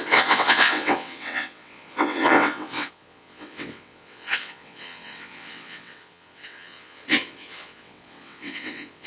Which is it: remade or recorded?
remade